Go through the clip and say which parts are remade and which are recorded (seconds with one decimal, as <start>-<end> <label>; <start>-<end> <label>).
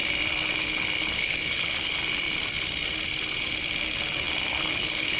0.0-0.6 recorded; 0.6-2.0 remade; 2.0-4.5 recorded; 4.5-5.2 remade